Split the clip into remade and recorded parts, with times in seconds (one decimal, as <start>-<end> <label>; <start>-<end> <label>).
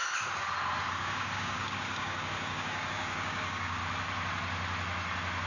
0.0-0.9 recorded; 0.9-3.8 remade; 3.8-5.5 recorded